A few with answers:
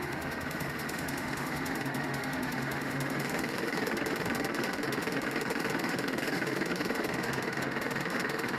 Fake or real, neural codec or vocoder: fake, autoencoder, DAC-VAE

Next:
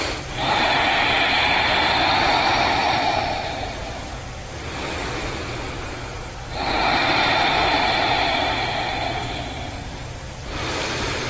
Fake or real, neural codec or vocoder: fake, vocoder, BigVGAN v2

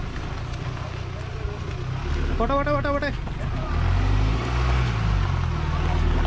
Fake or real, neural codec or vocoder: real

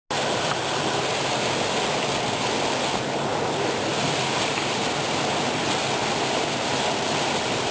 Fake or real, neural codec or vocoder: real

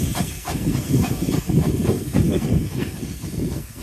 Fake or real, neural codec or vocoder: fake, codec, SNAC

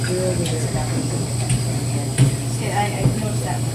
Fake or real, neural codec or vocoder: real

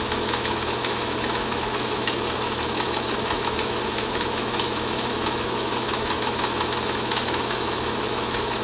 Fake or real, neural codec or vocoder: fake, autoencoder, DAC-VAE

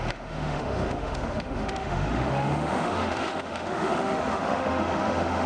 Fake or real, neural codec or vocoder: fake, autoencoder, DAC-VAE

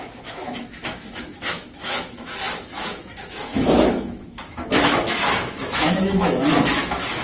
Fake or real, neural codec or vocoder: fake, autoencoder, DAC-VAE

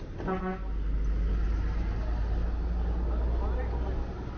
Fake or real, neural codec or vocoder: real